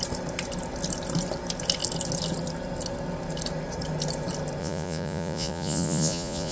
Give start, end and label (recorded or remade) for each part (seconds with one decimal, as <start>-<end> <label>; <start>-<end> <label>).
0.0-4.6 recorded; 4.6-6.5 remade